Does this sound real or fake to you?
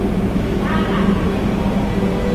real